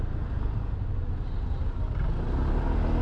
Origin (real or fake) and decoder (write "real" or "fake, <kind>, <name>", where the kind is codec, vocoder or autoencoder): real